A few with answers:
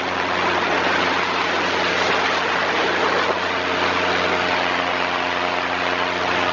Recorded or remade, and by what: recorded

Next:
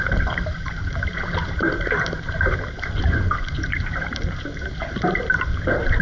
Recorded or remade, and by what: remade, vocoder, BigVGAN v2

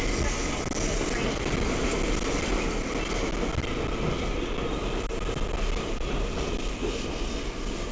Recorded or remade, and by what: recorded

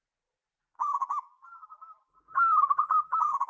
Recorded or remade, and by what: remade, vocoder, BigVGAN v2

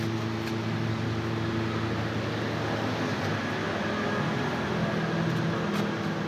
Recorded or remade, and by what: recorded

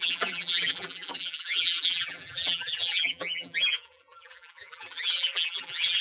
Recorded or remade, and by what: remade, vocoder, BigVGAN v2